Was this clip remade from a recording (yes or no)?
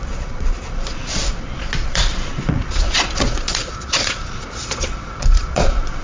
yes